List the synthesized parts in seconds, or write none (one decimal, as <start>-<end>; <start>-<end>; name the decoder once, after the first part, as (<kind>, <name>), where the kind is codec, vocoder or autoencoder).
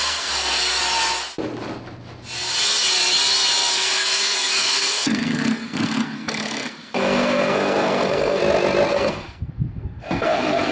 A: 0.0-0.8 (codec, SNAC); 3.7-8.4; 8.9-10.7